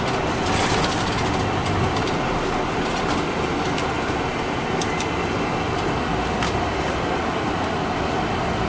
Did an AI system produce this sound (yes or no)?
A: no